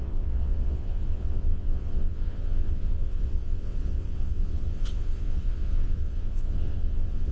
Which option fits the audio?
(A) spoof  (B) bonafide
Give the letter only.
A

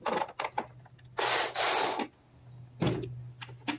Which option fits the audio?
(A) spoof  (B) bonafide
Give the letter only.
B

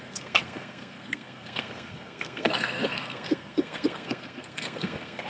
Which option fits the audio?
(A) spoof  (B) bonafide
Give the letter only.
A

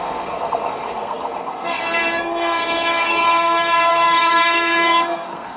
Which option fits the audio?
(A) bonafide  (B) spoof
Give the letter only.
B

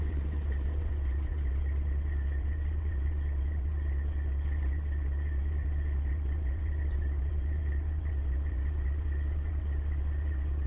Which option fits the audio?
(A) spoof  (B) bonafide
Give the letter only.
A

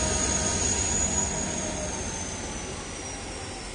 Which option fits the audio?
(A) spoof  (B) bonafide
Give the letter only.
B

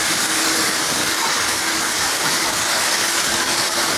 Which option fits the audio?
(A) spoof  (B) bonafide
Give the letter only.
A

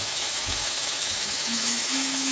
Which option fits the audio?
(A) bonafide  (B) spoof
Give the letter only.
B